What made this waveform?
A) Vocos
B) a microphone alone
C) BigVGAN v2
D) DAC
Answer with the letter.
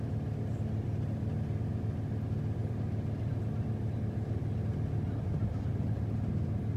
B